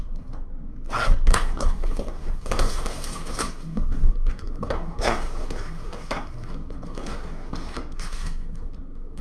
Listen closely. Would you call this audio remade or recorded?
remade